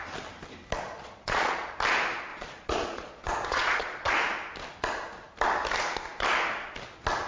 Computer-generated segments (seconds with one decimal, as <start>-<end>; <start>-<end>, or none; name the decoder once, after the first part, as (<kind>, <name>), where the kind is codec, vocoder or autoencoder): 1.0-1.7 (vocoder, Vocos); 2.3-4.1